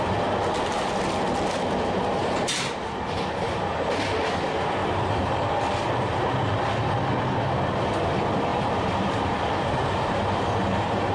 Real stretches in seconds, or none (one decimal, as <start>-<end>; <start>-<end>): 0.0-4.8; 5.3-8.5